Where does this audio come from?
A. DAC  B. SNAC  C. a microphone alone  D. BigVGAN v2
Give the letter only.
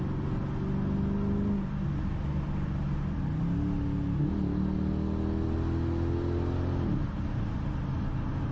C